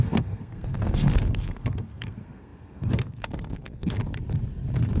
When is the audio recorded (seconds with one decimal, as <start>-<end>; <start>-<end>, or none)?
4.0-5.0